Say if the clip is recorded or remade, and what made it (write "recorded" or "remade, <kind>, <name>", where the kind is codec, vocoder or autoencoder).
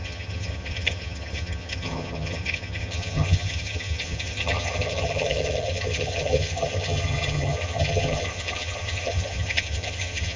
remade, vocoder, HiFi-GAN